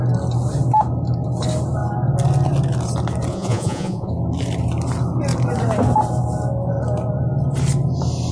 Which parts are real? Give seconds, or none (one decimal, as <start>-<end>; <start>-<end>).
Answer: 0.0-3.3; 4.1-8.3